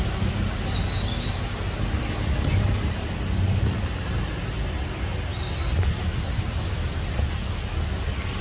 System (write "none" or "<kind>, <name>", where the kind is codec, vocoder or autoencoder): none